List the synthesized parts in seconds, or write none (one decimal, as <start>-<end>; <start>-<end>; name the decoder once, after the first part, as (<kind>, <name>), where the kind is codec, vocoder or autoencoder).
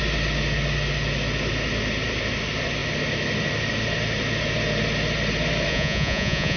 5.7-6.6 (vocoder, Vocos)